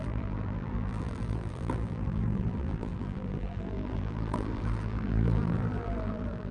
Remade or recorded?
remade